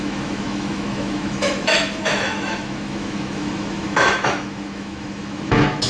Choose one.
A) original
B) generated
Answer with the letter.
B